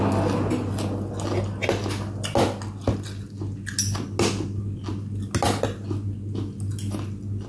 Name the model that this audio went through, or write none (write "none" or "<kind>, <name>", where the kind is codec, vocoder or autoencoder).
none